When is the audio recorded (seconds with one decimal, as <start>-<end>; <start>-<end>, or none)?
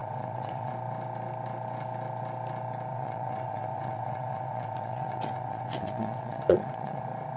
0.7-2.9; 7.0-7.4